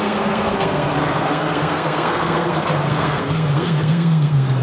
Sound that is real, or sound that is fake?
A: fake